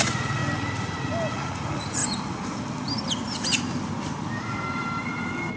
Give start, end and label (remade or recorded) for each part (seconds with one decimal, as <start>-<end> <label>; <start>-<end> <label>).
0.0-0.4 remade; 0.4-1.3 recorded; 1.3-2.0 remade; 2.0-5.6 recorded